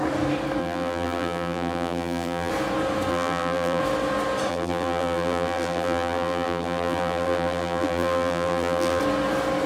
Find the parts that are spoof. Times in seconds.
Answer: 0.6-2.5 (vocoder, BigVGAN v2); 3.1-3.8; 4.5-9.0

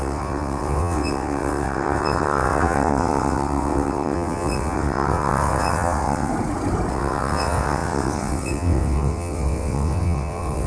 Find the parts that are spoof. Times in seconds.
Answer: 0.0-6.3 (vocoder, WaveNeXt); 6.9-10.7

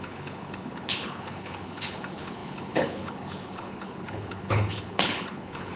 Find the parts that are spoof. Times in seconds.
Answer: 0.0-5.8 (codec, HILCodec)

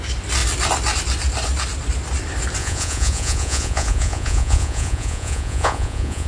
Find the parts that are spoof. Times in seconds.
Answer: 2.6-6.3 (vocoder, Vocos)